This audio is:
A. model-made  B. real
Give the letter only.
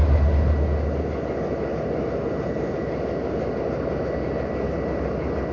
B